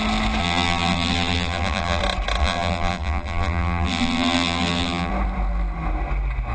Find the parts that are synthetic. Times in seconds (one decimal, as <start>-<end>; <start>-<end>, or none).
0.4-2.0; 2.4-5.1